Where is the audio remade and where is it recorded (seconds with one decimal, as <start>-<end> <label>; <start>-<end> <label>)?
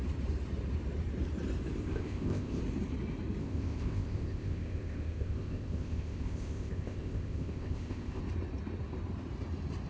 0.0-1.8 recorded; 1.8-2.6 remade; 2.6-3.4 recorded; 3.4-8.2 remade; 8.2-9.9 recorded